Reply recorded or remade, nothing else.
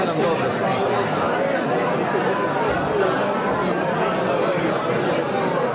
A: recorded